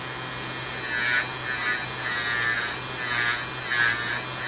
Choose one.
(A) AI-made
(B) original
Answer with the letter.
B